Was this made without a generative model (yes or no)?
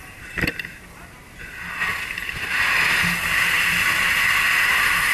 yes